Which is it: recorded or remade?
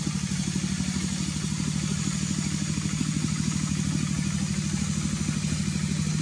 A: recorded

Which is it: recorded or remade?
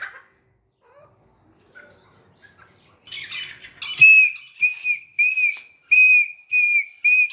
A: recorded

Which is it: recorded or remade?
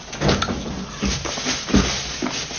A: recorded